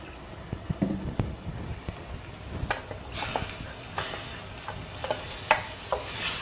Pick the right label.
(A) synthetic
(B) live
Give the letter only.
B